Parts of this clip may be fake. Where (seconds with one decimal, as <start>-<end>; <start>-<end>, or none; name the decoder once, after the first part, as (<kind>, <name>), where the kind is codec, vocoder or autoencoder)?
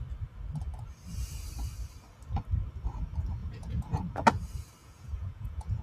3.4-4.0 (vocoder, Vocos); 4.8-5.8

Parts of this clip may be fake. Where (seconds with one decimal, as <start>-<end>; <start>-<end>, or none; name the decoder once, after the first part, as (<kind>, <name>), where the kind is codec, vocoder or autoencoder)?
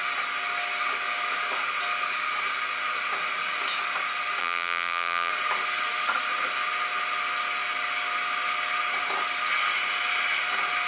4.4-5.3 (vocoder, BigVGAN v2)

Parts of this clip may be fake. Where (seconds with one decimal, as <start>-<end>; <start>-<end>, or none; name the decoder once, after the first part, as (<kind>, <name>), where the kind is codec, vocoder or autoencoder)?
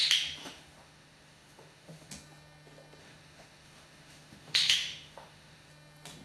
0.4-2.1 (autoencoder, DAC-VAE); 3.0-5.7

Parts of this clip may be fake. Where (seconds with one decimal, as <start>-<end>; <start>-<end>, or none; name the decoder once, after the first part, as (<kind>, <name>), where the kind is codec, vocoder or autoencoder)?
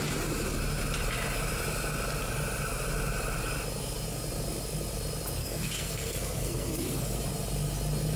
5.4-7.2 (codec, SNAC)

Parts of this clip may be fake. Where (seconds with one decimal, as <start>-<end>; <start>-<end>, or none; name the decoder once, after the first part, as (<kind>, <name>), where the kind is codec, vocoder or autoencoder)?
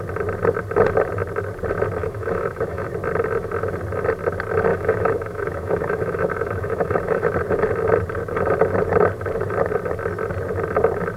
2.0-2.9 (autoencoder, DAC-VAE); 4.7-7.3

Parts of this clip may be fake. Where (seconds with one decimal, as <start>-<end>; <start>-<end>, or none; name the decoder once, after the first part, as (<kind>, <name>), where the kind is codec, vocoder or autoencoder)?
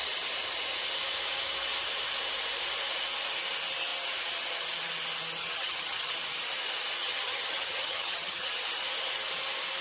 5.4-6.1 (vocoder, HiFi-GAN); 7.0-8.5